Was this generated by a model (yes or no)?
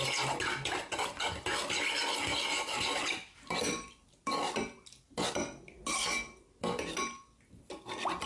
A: no